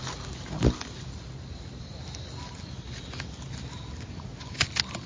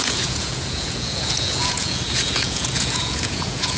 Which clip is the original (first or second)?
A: first